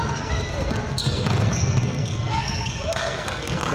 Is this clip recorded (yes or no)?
no